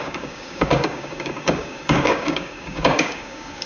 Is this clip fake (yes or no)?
yes